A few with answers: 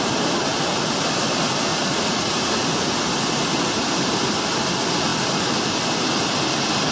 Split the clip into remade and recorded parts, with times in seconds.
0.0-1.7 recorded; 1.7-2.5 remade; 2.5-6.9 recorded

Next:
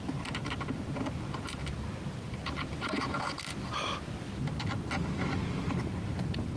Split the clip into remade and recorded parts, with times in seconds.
0.0-6.6 recorded

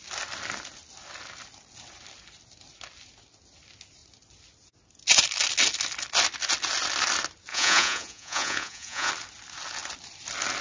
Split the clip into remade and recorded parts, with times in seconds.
0.0-7.5 recorded; 7.5-9.1 remade; 9.1-10.6 recorded

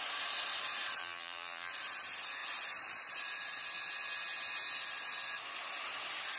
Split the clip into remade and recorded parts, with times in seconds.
0.0-1.0 recorded; 1.0-1.7 remade; 1.7-6.4 recorded

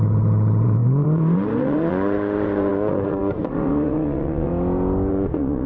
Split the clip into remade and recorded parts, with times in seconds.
0.0-4.5 remade; 4.5-5.1 recorded; 5.1-5.7 remade

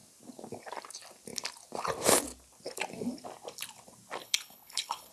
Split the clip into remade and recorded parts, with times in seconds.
0.0-4.2 recorded; 4.2-5.1 remade

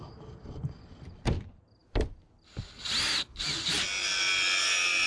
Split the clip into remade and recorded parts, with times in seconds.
0.0-5.1 recorded

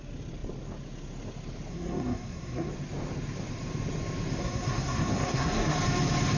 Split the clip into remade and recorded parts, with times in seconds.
0.0-1.7 recorded; 1.7-2.7 remade; 2.7-4.4 recorded; 4.4-5.8 remade; 5.8-6.4 recorded